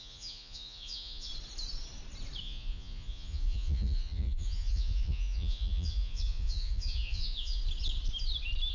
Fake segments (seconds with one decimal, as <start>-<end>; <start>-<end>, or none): 0.0-1.3; 2.4-7.6